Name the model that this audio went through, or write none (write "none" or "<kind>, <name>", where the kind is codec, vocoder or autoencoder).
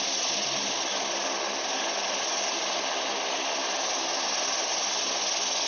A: none